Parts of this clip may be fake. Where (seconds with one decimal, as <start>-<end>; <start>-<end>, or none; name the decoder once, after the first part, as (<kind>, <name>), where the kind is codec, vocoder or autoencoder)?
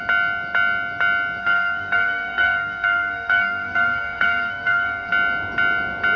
1.4-5.1 (codec, SNAC)